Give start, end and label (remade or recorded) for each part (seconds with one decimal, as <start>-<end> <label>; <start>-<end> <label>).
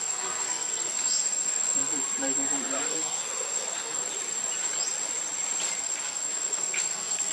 0.0-1.9 remade; 1.9-2.9 recorded; 2.9-4.0 remade; 4.0-5.8 recorded; 5.8-7.3 remade